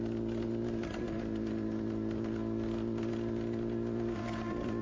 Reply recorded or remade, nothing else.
recorded